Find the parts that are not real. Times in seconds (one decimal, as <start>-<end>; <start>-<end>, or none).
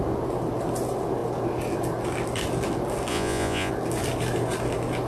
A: 3.1-3.7